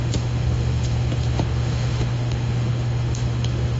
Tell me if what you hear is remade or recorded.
remade